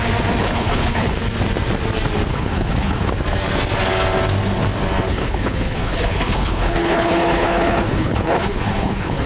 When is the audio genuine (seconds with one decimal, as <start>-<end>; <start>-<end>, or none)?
0.0-0.4; 1.2-2.3; 3.1-5.1